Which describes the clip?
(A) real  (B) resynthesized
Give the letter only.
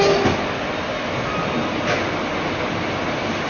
A